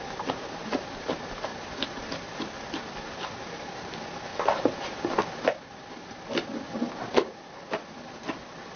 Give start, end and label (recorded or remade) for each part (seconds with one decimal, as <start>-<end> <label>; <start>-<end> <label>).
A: 0.0-8.8 recorded